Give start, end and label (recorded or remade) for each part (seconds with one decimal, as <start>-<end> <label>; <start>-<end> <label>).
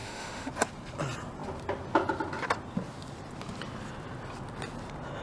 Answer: 0.0-0.5 remade; 0.5-5.2 recorded